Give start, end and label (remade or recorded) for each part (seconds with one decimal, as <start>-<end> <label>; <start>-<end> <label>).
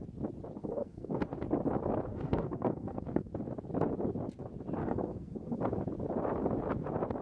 0.0-0.6 recorded; 0.6-1.2 remade; 1.2-2.1 recorded; 2.1-3.3 remade; 3.3-4.8 recorded; 4.8-5.6 remade; 5.6-7.2 recorded